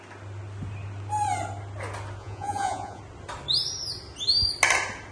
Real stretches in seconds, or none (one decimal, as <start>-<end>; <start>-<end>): 0.0-2.2; 3.0-5.1